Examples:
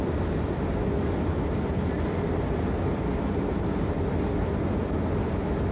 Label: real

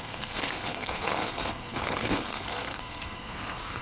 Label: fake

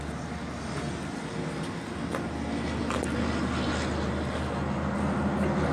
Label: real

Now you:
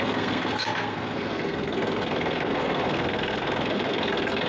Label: fake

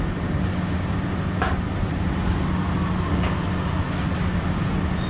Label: real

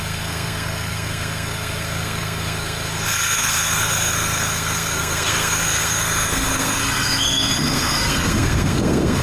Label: fake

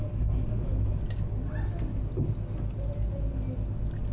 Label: real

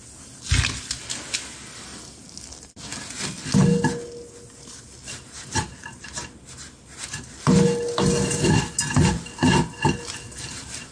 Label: real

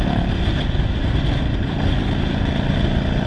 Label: real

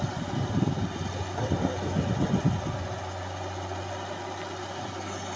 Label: real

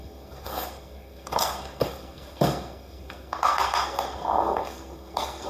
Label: fake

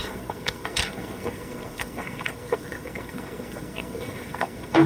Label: fake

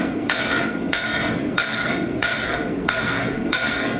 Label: fake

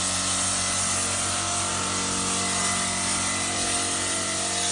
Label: real